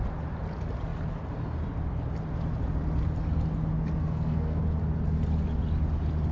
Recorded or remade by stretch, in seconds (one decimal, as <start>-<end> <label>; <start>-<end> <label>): 0.0-4.0 recorded; 4.0-4.6 remade; 4.6-6.3 recorded